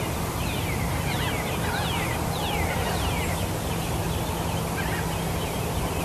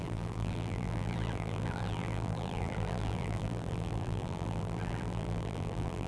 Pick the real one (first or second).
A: first